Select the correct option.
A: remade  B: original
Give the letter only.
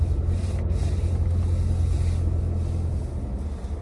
B